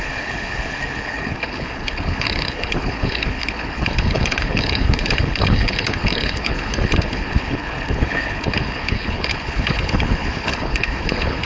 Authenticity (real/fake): fake